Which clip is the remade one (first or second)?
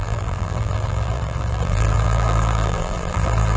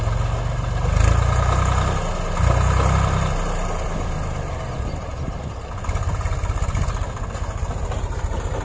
first